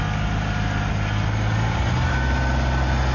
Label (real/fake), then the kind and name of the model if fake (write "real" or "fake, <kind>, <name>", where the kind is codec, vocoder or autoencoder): real